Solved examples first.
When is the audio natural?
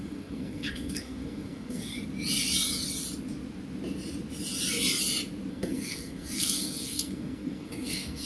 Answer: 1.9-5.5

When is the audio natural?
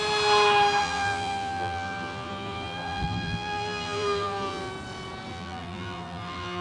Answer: 0.0-0.8; 4.7-5.3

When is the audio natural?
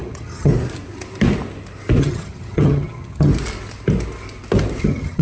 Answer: 0.5-2.0; 3.3-4.8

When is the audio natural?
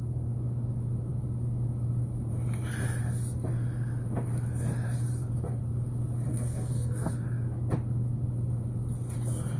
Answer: 0.0-6.3; 7.1-9.6